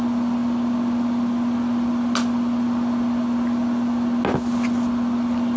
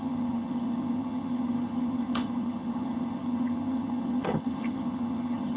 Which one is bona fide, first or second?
first